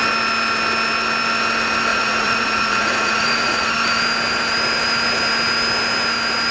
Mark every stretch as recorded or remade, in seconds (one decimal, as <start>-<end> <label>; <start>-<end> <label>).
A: 0.0-1.9 recorded; 1.9-3.7 remade; 3.7-6.5 recorded